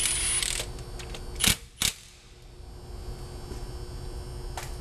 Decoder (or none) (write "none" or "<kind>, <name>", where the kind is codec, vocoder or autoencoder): none